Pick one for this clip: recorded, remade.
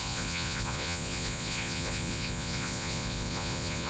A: remade